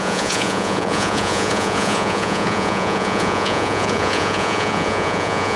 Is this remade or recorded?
remade